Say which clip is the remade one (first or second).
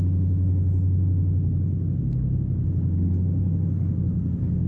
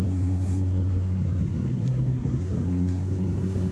second